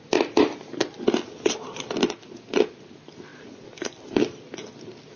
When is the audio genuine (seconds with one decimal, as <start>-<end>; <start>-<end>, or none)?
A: 0.0-3.3; 4.2-5.2